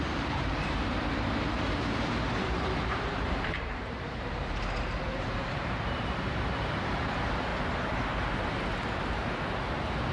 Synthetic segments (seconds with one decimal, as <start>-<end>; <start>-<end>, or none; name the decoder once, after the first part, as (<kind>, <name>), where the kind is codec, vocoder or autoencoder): 0.0-7.5 (vocoder, BigVGAN v2); 9.1-10.1

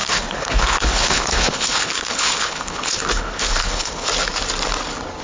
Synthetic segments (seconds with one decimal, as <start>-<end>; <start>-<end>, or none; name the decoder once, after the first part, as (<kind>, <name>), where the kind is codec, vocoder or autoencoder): 0.0-4.1 (codec, HILCodec)

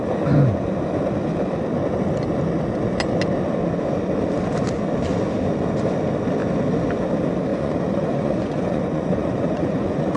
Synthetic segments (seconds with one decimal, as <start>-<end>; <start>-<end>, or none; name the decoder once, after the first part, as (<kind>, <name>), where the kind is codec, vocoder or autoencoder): 7.5-10.2 (vocoder, Vocos)

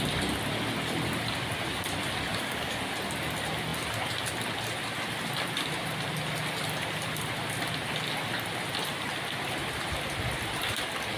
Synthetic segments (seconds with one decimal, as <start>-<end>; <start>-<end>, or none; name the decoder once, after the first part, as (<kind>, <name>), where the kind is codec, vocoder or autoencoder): 2.3-2.9 (codec, DAC)